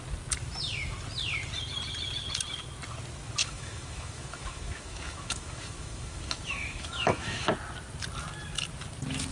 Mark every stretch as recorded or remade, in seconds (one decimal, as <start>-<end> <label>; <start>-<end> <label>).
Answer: 0.0-3.4 recorded; 3.4-7.5 remade; 7.5-9.3 recorded